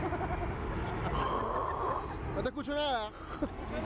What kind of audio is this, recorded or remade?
recorded